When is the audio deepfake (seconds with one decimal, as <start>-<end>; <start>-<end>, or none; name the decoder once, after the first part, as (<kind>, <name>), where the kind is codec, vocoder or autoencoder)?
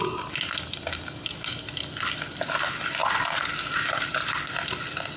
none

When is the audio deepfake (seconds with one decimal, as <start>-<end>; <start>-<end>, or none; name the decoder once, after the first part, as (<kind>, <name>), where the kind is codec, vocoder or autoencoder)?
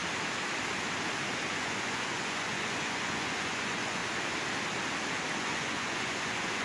1.5-4.0 (vocoder, Vocos); 5.4-6.6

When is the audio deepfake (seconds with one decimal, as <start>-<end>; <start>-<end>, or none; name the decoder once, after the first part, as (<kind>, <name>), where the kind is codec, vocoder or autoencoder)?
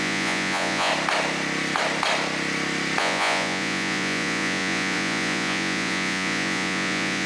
0.0-0.9 (vocoder, Vocos); 3.0-7.3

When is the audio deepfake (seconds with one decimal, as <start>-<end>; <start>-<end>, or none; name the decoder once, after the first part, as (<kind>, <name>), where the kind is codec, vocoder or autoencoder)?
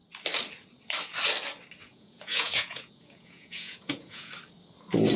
1.8-4.3 (vocoder, Vocos)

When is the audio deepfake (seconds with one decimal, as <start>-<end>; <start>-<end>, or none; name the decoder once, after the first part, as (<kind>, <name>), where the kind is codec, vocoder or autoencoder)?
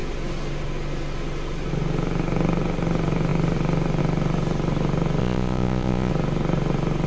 5.2-6.1 (vocoder, Vocos)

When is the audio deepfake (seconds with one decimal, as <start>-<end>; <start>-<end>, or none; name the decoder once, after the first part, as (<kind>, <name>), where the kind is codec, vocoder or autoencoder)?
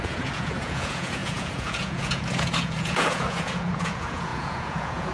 0.0-5.1 (vocoder, Vocos)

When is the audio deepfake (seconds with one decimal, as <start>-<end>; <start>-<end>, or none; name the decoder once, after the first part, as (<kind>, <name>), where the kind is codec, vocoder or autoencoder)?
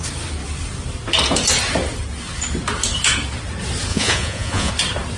3.9-4.7 (vocoder, Vocos)